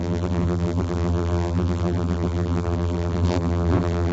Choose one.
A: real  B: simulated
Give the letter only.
B